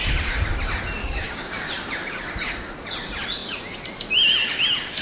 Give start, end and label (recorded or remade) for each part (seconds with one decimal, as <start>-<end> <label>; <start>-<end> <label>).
0.0-1.0 recorded; 1.0-1.7 remade; 1.7-5.0 recorded